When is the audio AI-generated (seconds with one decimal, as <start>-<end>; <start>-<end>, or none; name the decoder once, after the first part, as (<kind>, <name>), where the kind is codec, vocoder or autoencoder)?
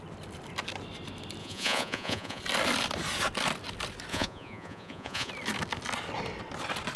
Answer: 1.4-2.4 (vocoder, Vocos); 4.1-5.3